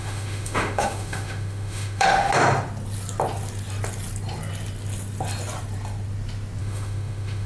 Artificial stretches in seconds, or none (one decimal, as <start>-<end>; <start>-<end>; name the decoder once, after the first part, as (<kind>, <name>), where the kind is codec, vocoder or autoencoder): 0.0-2.3 (autoencoder, DAC-VAE); 6.6-7.5